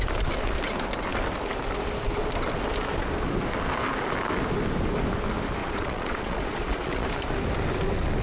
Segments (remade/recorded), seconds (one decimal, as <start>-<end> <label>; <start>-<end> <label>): 0.0-5.6 recorded; 5.6-7.1 remade; 7.1-8.2 recorded